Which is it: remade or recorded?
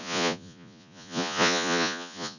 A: remade